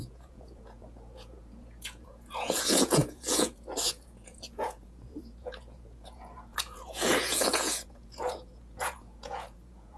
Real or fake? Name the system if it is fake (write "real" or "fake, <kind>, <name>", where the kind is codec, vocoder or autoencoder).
fake, vocoder, Vocos